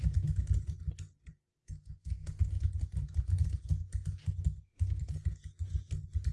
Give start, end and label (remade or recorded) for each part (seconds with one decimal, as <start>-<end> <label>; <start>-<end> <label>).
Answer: 0.0-1.3 recorded; 1.3-2.6 remade; 2.6-6.3 recorded

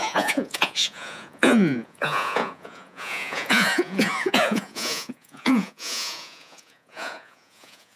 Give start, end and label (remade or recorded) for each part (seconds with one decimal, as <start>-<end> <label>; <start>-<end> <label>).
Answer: 0.0-8.0 remade

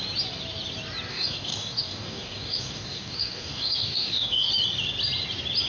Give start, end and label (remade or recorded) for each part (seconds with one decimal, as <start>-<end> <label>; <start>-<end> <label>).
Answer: 0.0-1.1 recorded; 1.1-4.5 remade; 4.5-5.7 recorded

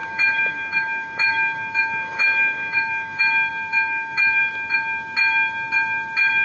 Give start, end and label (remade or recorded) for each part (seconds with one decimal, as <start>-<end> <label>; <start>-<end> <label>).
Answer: 0.0-3.2 remade; 3.2-3.7 recorded; 3.7-4.4 remade; 4.4-6.4 recorded

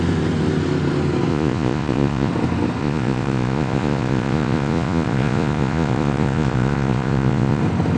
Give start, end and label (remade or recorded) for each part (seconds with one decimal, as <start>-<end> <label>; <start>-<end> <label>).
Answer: 0.0-1.3 recorded; 1.3-2.3 remade; 2.3-2.8 recorded; 2.8-7.6 remade; 7.6-8.0 recorded